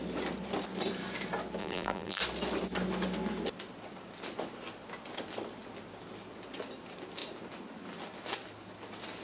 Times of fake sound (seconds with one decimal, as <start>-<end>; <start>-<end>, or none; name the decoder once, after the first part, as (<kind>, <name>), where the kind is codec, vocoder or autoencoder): 1.6-2.2 (vocoder, BigVGAN v2)